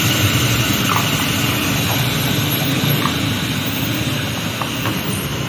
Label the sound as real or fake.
real